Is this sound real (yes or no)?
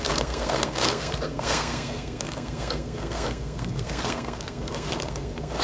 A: no